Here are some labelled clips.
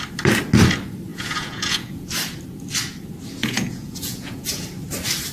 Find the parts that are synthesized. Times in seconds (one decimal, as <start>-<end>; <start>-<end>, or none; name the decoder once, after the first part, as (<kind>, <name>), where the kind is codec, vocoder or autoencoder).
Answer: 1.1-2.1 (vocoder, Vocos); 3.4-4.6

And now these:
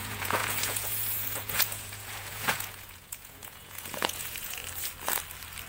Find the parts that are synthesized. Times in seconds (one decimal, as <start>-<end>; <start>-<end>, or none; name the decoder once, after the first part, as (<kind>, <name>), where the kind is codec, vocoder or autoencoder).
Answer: 0.0-4.6 (vocoder, Vocos)

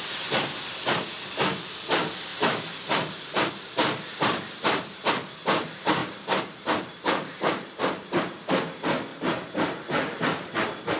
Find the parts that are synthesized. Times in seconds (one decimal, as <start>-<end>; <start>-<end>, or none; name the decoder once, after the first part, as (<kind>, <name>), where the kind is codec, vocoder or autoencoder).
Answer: 2.3-3.5 (vocoder, BigVGAN v2); 6.0-8.1; 9.1-10.2